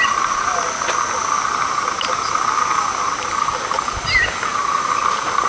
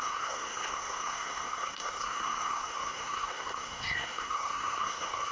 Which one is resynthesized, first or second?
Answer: second